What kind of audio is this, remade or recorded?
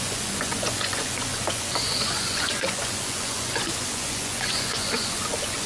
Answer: remade